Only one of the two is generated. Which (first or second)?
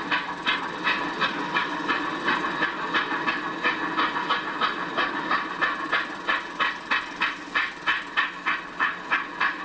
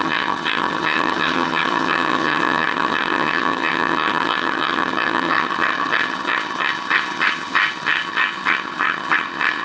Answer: second